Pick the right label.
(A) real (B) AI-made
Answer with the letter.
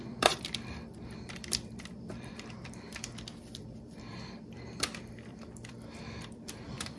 B